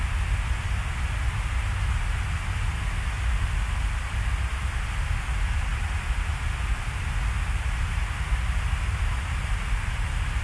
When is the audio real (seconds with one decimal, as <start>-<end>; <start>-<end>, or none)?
0.0-10.4

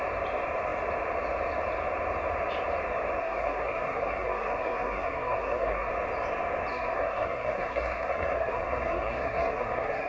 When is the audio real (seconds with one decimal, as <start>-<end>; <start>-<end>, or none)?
0.0-3.2; 5.9-6.7

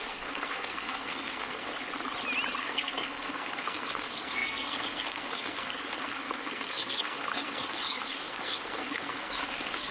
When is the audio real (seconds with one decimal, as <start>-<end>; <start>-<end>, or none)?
1.7-2.6

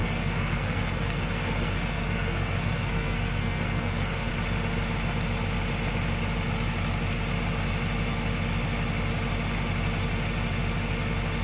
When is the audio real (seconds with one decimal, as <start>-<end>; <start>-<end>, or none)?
4.3-11.4